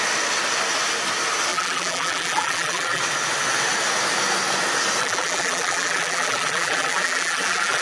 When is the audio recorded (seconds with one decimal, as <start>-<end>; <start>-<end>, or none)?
0.0-1.5; 3.0-5.0